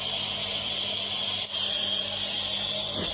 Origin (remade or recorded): recorded